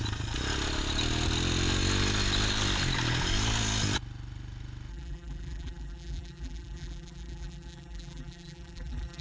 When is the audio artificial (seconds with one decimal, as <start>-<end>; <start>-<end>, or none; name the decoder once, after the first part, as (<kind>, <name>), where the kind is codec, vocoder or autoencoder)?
4.9-9.2 (vocoder, BigVGAN v2)

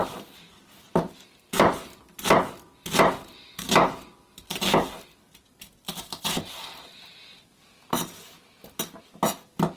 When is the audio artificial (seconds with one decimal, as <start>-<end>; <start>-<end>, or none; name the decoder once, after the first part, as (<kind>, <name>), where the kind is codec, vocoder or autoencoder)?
none